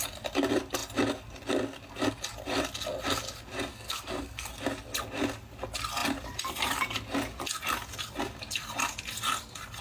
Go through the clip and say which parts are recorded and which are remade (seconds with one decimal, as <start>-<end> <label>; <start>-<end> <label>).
0.0-3.7 recorded; 3.7-4.5 remade; 4.5-9.8 recorded